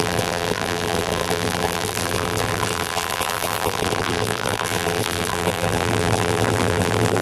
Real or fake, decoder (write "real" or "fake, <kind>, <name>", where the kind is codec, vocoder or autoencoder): fake, vocoder, BigVGAN v2